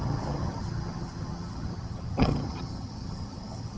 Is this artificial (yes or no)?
yes